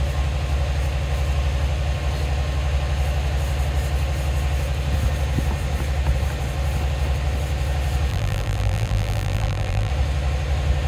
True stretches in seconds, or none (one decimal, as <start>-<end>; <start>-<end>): 0.0-8.1; 9.9-10.9